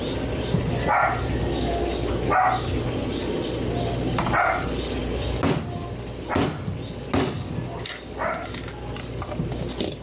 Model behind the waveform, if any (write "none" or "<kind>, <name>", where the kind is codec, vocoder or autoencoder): none